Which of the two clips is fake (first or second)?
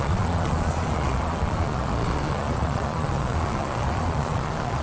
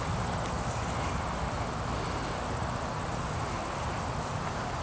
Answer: first